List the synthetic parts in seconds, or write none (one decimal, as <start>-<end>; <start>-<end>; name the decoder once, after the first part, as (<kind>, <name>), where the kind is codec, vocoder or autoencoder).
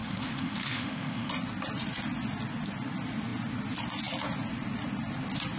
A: 0.0-1.3 (autoencoder, DAC-VAE)